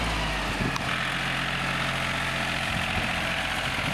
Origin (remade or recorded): recorded